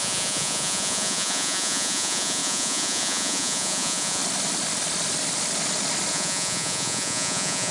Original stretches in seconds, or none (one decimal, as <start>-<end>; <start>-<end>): 4.2-6.1